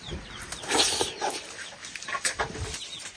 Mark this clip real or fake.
real